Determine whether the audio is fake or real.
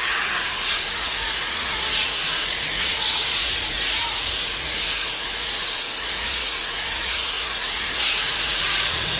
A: fake